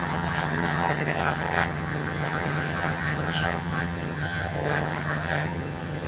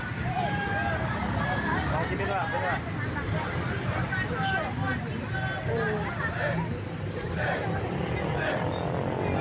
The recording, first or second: second